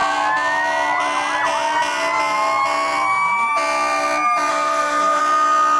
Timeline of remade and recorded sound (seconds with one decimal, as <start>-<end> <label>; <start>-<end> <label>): 0.0-4.5 recorded; 4.5-5.2 remade; 5.2-5.8 recorded